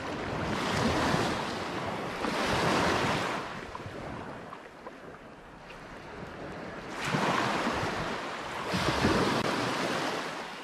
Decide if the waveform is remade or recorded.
recorded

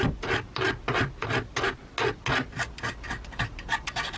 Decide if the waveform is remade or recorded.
recorded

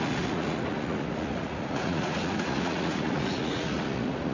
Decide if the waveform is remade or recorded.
remade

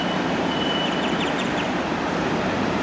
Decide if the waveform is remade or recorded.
remade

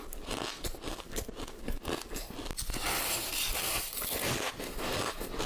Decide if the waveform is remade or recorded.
recorded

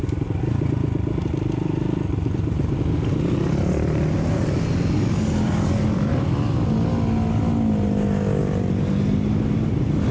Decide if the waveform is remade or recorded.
recorded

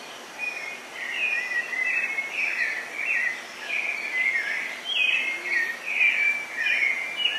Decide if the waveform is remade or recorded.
recorded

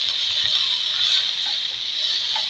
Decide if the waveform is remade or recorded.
recorded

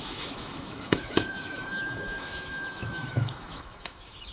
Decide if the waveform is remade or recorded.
remade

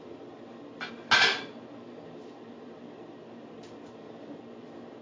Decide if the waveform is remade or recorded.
recorded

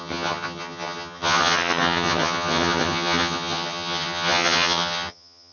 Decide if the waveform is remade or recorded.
remade